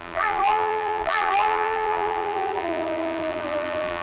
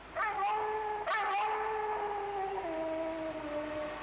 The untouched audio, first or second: second